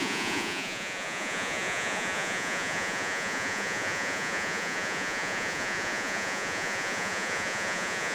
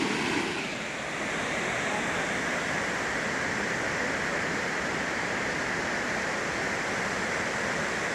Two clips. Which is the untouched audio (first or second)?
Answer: second